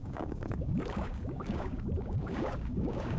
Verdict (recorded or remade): remade